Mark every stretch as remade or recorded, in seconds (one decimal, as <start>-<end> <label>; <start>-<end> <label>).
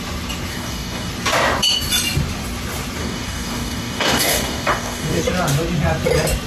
0.0-0.5 recorded; 0.5-1.1 remade; 1.1-3.0 recorded; 3.0-5.2 remade; 5.2-6.5 recorded